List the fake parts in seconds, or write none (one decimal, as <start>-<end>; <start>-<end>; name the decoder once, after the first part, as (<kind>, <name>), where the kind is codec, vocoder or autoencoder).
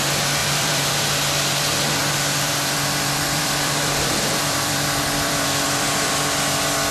0.4-0.9 (vocoder, BigVGAN v2); 2.0-6.1